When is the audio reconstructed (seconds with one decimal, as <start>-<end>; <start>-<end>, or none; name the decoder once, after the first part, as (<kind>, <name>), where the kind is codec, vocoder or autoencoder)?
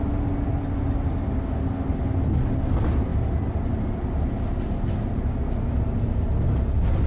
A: none